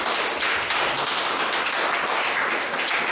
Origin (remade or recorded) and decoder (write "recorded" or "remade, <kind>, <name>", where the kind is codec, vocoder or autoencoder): recorded